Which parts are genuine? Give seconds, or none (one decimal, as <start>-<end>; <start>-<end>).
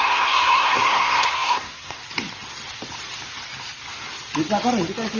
2.0-5.2